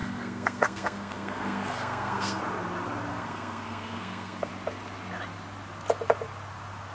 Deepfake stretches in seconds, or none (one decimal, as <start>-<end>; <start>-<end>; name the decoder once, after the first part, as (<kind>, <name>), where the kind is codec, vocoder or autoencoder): 0.0-2.4 (codec, SNAC); 3.1-4.5